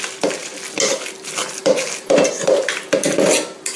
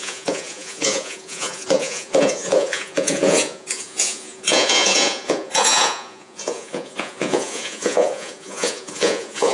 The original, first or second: first